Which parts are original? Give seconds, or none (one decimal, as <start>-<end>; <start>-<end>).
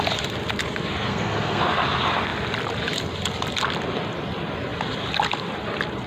0.0-1.1; 1.6-6.1